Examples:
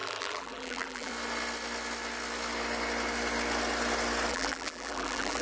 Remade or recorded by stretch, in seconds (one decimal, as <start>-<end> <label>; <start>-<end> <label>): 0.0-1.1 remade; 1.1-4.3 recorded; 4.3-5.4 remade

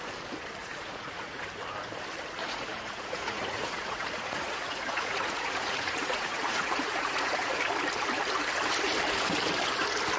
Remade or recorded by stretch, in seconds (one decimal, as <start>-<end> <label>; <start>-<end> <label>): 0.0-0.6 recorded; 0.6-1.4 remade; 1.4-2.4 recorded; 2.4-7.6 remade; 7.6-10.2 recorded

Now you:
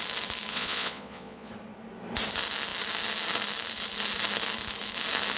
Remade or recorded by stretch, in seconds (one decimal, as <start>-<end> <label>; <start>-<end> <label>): 0.0-0.5 recorded; 0.5-1.5 remade; 1.5-5.4 recorded